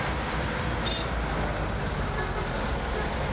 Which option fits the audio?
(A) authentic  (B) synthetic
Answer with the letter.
A